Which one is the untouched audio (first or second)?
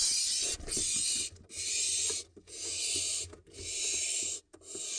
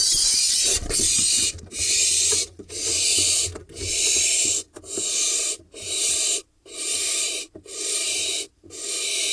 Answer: first